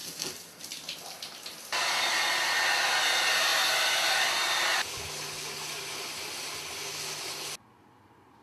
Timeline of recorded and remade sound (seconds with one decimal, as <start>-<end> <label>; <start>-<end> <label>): 0.0-0.6 remade; 0.6-8.4 recorded